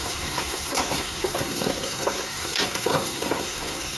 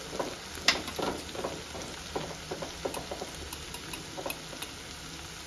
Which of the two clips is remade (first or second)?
first